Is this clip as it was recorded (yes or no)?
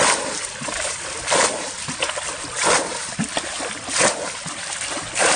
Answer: no